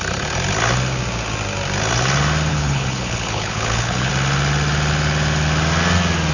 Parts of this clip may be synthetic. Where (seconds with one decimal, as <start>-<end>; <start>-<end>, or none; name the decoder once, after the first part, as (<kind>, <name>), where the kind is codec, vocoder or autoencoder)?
2.5-4.1 (codec, HILCodec)